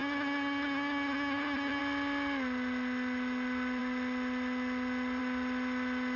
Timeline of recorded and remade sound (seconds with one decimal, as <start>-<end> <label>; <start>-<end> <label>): 0.0-1.8 remade; 1.8-6.2 recorded